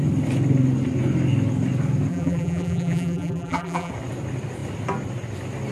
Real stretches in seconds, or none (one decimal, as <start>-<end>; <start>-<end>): 0.0-2.1; 3.9-5.7